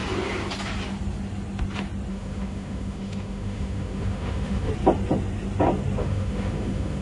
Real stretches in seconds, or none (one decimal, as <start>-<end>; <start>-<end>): 0.0-2.1; 4.7-6.0

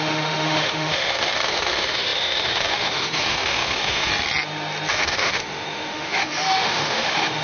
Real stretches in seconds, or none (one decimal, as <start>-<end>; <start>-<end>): 4.1-4.9

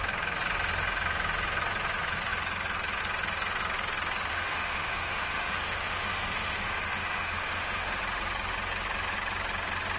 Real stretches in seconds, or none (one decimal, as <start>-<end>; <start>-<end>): 0.0-4.3; 8.0-10.0